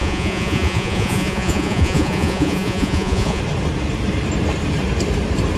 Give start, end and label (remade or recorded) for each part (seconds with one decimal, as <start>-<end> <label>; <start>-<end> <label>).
0.0-3.4 remade; 3.4-5.6 recorded